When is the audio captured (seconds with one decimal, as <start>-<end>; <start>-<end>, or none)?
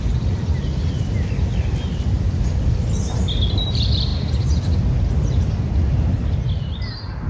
0.0-7.3